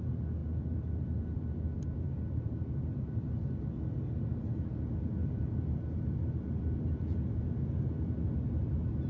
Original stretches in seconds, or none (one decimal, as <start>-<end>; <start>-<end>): 0.0-0.4; 2.1-5.2; 7.0-9.1